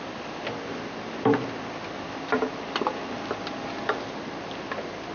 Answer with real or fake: real